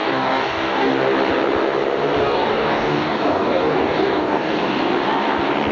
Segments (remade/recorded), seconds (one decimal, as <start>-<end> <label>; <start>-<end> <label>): 0.0-0.9 remade; 0.9-2.2 recorded; 2.2-4.9 remade; 4.9-5.7 recorded